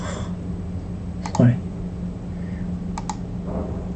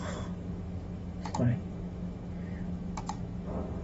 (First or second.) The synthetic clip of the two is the second